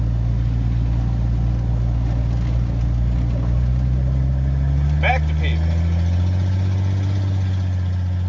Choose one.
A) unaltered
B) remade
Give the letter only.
A